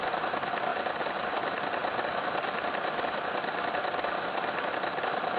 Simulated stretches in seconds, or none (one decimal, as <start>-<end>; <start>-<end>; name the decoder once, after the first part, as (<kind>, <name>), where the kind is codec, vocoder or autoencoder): none